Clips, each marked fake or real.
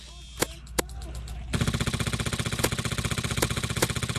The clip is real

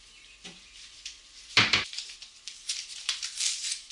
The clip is fake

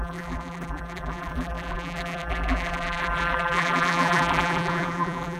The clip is fake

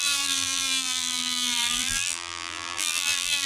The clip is fake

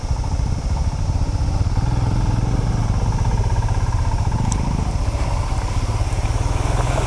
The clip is real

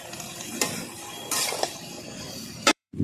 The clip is fake